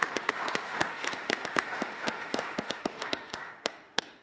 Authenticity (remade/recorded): remade